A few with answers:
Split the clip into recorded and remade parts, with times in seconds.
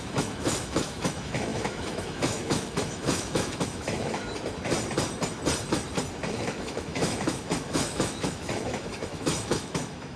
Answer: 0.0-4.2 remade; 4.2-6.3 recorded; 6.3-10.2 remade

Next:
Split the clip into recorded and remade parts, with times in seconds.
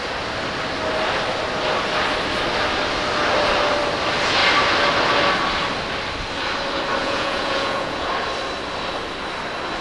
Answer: 0.0-7.0 recorded; 7.0-8.1 remade; 8.1-9.8 recorded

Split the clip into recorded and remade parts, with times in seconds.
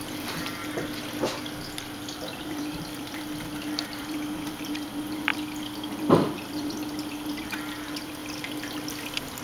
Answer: 0.0-0.6 remade; 0.6-1.8 recorded; 1.8-8.2 remade; 8.2-8.9 recorded; 8.9-9.4 remade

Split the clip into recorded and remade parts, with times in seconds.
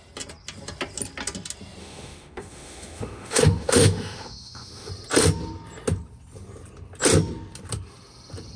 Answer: 0.0-1.8 recorded; 1.8-4.9 remade; 4.9-8.6 recorded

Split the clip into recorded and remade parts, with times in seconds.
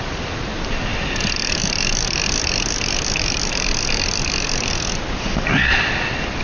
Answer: 0.0-0.9 recorded; 0.9-4.7 remade; 4.7-6.4 recorded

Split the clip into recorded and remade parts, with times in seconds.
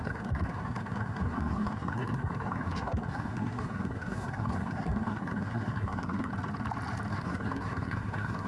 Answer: 0.0-6.3 remade; 6.3-7.1 recorded; 7.1-8.5 remade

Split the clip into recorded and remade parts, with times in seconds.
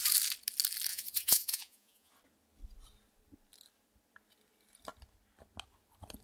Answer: 0.0-0.9 recorded; 0.9-2.1 remade; 2.1-6.2 recorded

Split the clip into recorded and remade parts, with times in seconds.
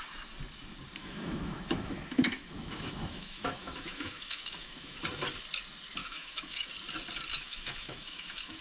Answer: 0.0-1.0 recorded; 1.0-5.0 remade; 5.0-6.0 recorded; 6.0-6.7 remade; 6.7-7.3 recorded; 7.3-8.6 remade